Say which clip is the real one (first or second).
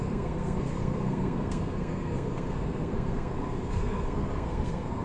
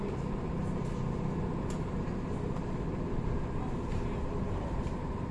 second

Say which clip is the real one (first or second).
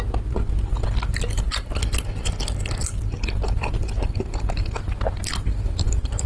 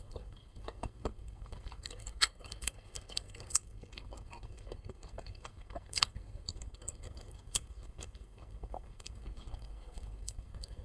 first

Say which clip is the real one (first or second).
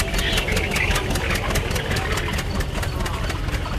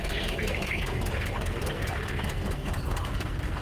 first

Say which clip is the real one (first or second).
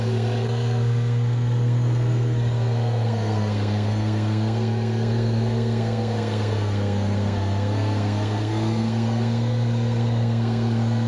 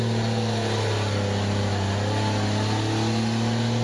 second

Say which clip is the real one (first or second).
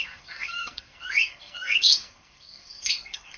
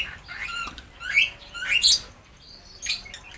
second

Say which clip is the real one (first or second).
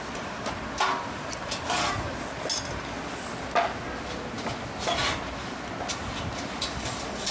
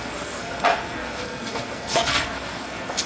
first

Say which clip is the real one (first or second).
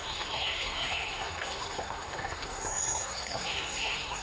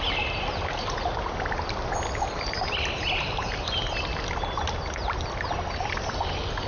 second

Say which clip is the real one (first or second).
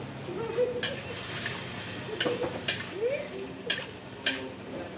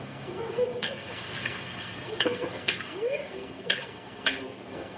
first